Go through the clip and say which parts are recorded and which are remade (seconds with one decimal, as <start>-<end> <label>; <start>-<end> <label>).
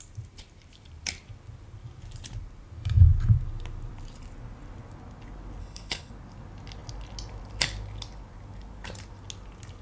0.0-5.6 recorded; 5.6-6.1 remade; 6.1-9.8 recorded